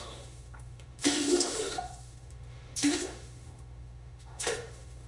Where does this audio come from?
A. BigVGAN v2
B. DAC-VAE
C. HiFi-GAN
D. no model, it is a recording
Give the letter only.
B